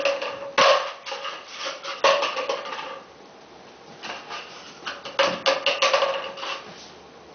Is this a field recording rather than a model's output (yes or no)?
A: yes